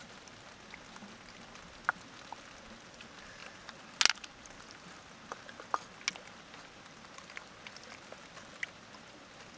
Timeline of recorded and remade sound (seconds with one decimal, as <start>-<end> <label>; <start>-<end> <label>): 0.0-9.6 recorded